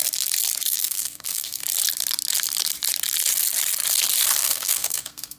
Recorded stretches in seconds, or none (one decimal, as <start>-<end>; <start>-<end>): 0.0-0.7; 1.6-4.4